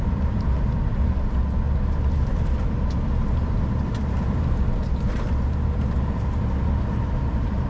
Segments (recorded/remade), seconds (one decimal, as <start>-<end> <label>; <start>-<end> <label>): 0.0-1.4 remade; 1.4-2.6 recorded; 2.6-7.7 remade